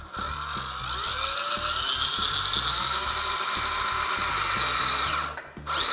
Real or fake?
real